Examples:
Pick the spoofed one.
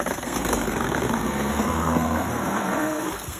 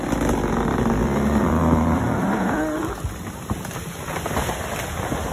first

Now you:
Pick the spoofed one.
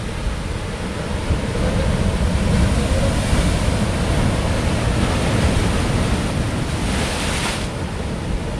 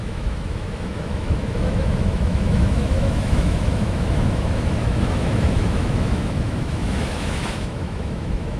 second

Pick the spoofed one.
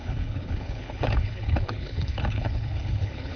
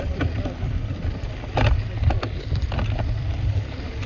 first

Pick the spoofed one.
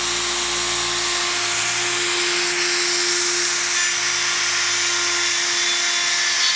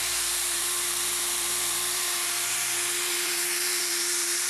second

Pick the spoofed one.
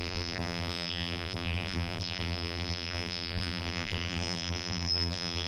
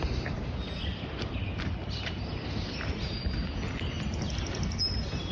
first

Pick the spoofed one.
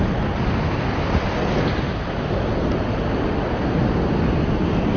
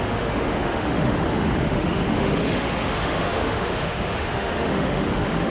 second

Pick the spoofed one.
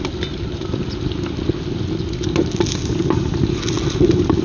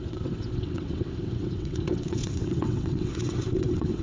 second